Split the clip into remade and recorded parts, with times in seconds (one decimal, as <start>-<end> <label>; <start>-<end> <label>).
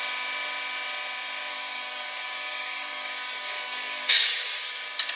0.0-1.5 recorded; 1.5-4.6 remade; 4.6-5.2 recorded